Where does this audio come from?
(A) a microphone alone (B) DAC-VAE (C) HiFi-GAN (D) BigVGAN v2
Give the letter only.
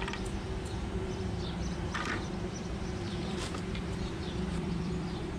D